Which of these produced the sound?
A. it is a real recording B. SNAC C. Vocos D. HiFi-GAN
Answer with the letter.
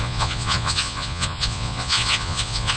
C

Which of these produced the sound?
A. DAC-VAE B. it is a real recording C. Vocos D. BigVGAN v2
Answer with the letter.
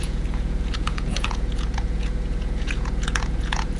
C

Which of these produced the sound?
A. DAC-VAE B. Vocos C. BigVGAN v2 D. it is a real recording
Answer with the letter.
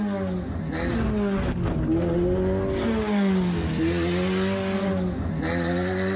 D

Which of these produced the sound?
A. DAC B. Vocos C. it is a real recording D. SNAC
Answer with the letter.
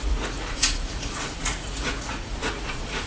B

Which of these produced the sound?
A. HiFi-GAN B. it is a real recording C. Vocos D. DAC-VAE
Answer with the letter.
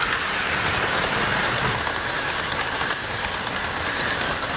B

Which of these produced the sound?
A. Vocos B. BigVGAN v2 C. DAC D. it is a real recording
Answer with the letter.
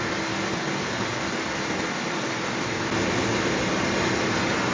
D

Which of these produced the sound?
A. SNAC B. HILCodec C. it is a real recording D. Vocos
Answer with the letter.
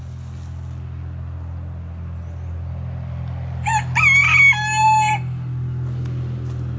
C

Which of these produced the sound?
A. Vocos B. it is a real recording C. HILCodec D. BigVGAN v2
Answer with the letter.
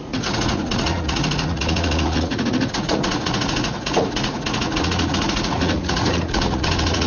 A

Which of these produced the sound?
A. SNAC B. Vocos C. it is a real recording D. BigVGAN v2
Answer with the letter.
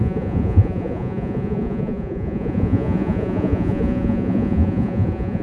B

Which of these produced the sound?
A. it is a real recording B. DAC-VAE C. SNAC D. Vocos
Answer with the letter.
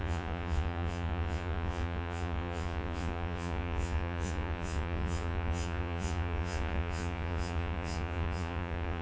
D